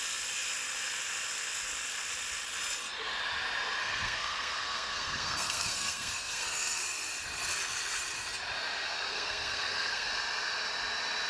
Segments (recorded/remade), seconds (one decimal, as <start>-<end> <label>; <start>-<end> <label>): 0.0-3.8 recorded; 3.8-6.8 remade; 6.8-9.1 recorded; 9.1-10.1 remade; 10.1-11.3 recorded